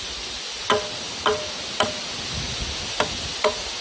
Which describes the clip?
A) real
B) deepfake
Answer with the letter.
A